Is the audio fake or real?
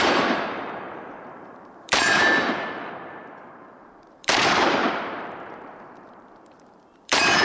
fake